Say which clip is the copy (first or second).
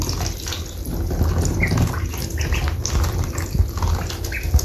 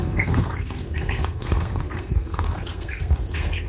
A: second